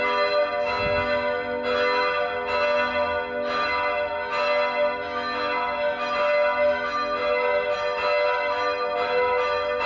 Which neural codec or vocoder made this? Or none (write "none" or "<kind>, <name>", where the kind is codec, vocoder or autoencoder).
none